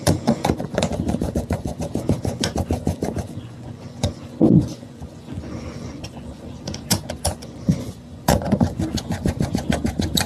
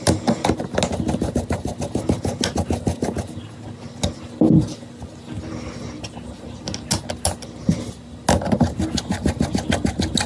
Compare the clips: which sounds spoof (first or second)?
first